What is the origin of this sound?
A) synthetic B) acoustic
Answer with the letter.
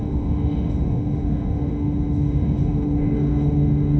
A